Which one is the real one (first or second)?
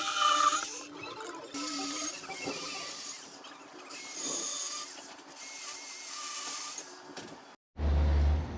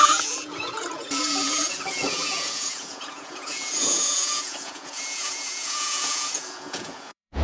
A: first